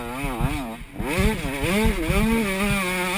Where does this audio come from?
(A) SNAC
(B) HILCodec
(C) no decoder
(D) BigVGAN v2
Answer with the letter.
C